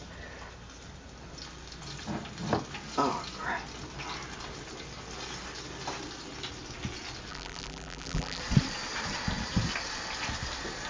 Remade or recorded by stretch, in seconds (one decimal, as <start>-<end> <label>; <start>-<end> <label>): 0.0-7.3 recorded; 7.3-8.4 remade; 8.4-10.9 recorded